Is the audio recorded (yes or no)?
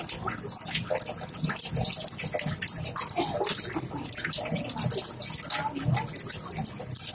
yes